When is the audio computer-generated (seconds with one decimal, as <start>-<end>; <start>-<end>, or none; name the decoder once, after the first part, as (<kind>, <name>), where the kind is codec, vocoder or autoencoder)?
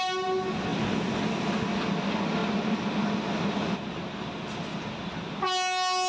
none